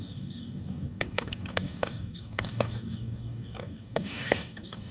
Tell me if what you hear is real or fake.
fake